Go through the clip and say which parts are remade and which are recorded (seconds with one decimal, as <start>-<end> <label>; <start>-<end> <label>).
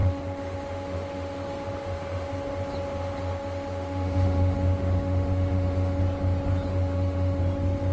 0.0-2.3 remade; 2.3-3.2 recorded; 3.2-6.0 remade; 6.0-6.7 recorded; 6.7-7.4 remade; 7.4-7.9 recorded